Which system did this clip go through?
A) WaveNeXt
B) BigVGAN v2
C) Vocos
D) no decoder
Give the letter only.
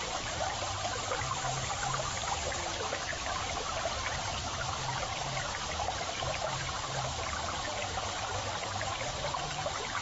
B